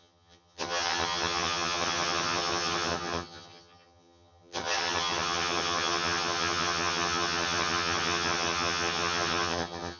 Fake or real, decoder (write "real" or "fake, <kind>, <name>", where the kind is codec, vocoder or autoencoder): fake, vocoder, HiFi-GAN